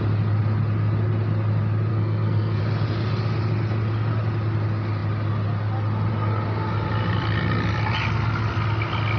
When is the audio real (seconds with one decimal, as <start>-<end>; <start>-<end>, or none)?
0.0-1.9; 2.6-9.2